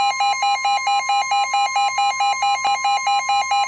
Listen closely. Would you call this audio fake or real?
real